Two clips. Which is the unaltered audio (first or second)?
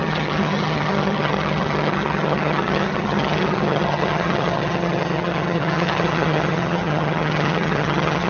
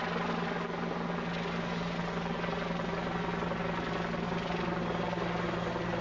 second